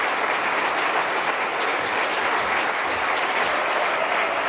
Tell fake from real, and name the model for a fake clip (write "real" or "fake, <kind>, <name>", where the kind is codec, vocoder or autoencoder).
real